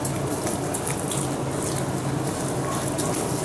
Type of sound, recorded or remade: recorded